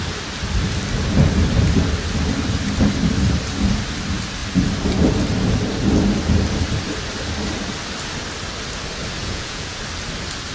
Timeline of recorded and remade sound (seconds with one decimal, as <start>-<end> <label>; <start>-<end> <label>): 0.0-9.2 recorded; 9.2-9.8 remade; 9.8-10.5 recorded